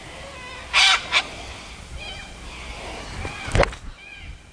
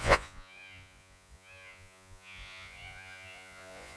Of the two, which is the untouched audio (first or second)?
first